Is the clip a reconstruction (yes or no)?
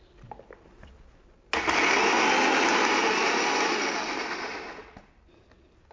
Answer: no